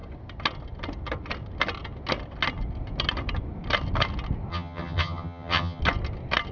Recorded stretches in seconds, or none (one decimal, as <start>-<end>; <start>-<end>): 0.0-4.5; 5.8-6.5